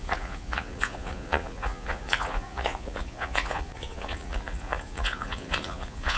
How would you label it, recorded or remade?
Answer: remade